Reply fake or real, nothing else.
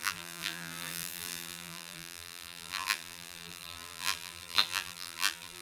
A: fake